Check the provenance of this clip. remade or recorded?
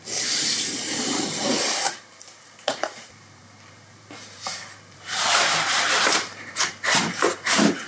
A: remade